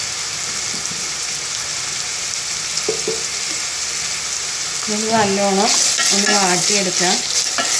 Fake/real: real